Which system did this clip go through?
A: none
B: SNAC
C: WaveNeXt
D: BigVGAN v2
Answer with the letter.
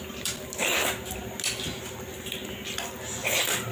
A